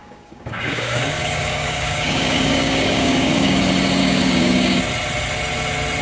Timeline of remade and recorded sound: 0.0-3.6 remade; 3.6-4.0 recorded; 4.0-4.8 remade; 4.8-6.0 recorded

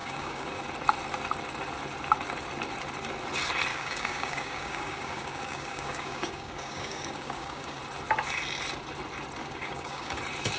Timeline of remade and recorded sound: 0.0-0.6 remade; 0.6-3.7 recorded; 3.7-7.8 remade; 7.8-9.4 recorded; 9.4-10.2 remade; 10.2-10.6 recorded

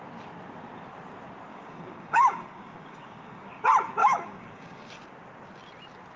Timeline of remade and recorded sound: 0.0-1.5 recorded; 1.5-3.6 remade; 3.6-4.0 recorded; 4.0-4.9 remade; 4.9-6.2 recorded